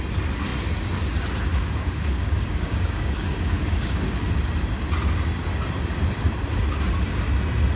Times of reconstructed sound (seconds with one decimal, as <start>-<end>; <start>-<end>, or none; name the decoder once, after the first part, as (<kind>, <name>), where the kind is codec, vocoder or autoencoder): 1.5-4.3 (codec, DAC)